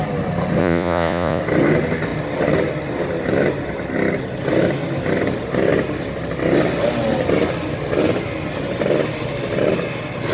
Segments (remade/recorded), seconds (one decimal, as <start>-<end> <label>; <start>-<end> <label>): 0.0-0.6 recorded; 0.6-1.4 remade; 1.4-10.3 recorded